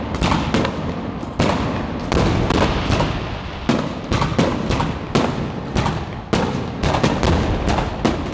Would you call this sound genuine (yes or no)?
yes